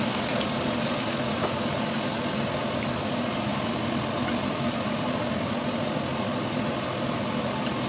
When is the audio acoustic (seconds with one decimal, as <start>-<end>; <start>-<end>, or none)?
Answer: 0.0-3.5; 6.7-7.9